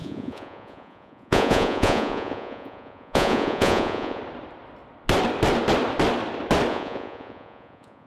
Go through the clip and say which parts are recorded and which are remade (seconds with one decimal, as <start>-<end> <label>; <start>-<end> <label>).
0.0-4.2 remade; 4.2-6.7 recorded; 6.7-8.1 remade